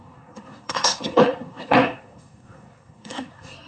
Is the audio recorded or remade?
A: remade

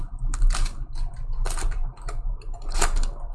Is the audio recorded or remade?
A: remade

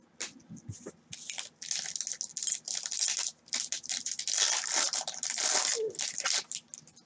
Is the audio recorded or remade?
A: recorded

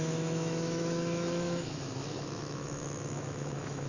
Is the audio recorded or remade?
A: remade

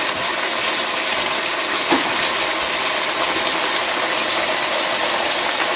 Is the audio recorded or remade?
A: recorded